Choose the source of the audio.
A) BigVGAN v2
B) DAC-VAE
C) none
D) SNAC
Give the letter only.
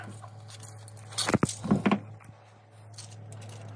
C